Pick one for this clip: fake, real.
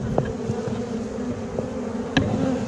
real